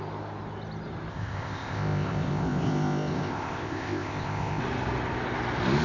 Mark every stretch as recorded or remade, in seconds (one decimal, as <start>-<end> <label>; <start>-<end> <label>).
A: 0.0-1.1 recorded; 1.1-4.6 remade; 4.6-5.8 recorded